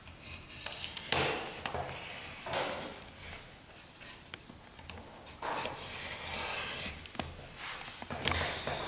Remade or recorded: recorded